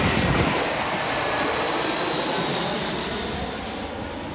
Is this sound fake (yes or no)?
no